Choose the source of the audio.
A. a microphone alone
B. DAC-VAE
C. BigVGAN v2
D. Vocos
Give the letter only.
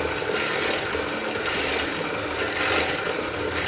A